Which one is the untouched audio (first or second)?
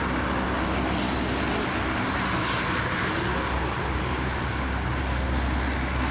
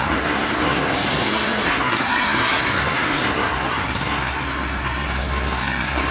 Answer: first